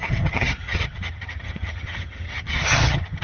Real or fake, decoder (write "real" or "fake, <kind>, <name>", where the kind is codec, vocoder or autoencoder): fake, vocoder, HiFi-GAN